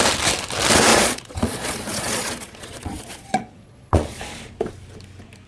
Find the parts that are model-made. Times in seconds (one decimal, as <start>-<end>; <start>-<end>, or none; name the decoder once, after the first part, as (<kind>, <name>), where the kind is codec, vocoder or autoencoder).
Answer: 0.9-4.2 (vocoder, Vocos)